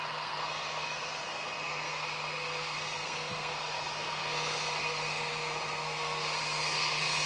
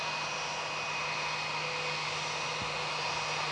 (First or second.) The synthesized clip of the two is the first